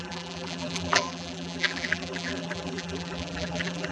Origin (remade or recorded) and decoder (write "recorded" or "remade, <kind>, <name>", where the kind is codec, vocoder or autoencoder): remade, vocoder, BigVGAN v2